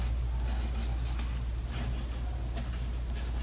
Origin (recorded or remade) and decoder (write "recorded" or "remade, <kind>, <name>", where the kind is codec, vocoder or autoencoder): recorded